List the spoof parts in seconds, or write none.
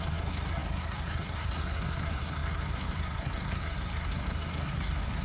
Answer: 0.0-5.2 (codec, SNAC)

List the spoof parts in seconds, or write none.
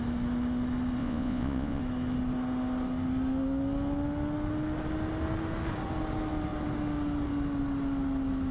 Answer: 1.0-1.8 (vocoder, Vocos)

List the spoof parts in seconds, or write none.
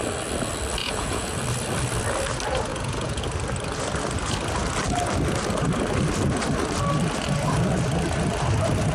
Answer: 0.8-1.4 (vocoder, Vocos); 2.7-3.2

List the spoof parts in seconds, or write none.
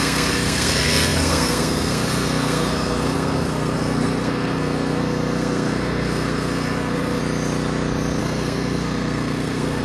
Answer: 0.0-7.2 (codec, SNAC); 8.2-9.8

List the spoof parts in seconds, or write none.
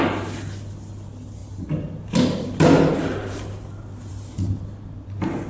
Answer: none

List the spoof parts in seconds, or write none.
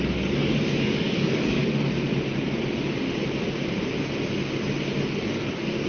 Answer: 0.0-1.6 (codec, DAC); 5.1-5.9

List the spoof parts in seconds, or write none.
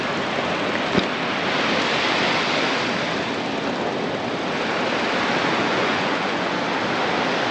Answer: 5.6-6.6 (vocoder, Vocos)